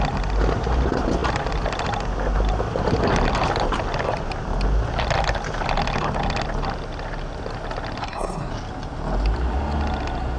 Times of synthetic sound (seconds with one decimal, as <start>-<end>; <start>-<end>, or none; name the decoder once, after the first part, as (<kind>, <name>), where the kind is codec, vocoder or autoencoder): 8.0-8.5 (codec, SNAC)